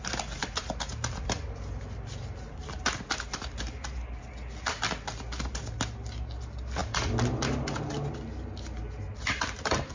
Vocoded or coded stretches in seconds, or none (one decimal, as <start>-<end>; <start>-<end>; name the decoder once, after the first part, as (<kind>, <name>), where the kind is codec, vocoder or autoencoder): none